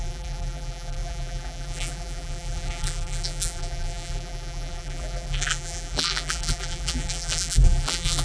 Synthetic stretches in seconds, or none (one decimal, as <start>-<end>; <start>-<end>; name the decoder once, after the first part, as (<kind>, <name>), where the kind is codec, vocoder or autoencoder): 0.0-8.2 (vocoder, BigVGAN v2)